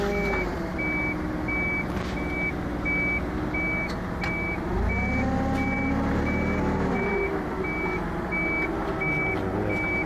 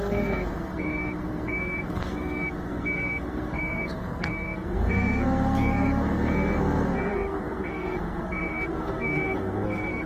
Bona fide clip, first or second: first